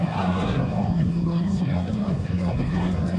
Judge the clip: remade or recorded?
remade